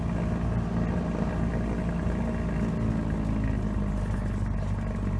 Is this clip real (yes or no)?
yes